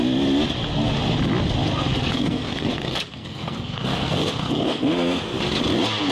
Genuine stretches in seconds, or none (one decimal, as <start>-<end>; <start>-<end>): 0.0-1.9; 5.4-6.1